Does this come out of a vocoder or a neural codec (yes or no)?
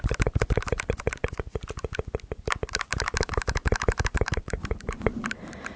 no